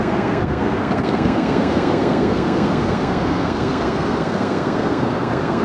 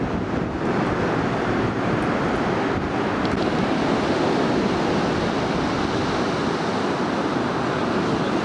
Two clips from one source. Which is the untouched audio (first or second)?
second